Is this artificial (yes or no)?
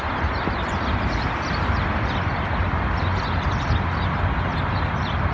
no